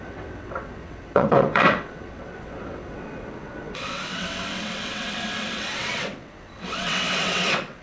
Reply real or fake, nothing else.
fake